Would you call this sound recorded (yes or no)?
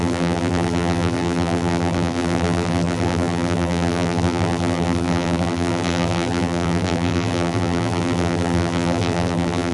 no